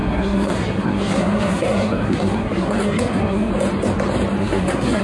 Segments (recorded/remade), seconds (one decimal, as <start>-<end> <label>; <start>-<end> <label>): 0.0-3.5 remade; 3.5-4.4 recorded; 4.4-5.0 remade